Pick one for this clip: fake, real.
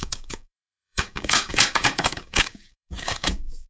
fake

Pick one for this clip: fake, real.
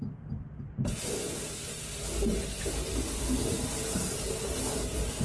real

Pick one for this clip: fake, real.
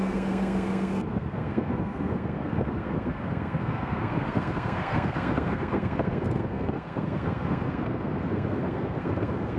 fake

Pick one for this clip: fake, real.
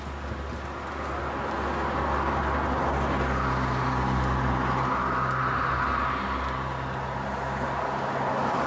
real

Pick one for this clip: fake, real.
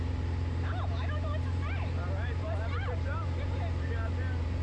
fake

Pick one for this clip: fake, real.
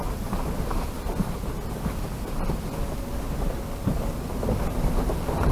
real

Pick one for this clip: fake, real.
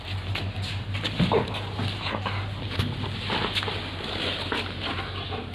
real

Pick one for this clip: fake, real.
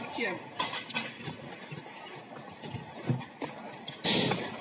real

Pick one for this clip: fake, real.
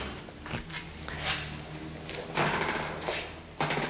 real